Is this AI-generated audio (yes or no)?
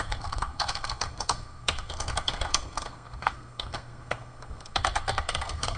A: yes